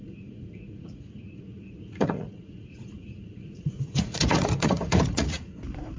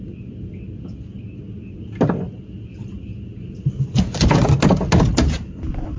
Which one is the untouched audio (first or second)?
second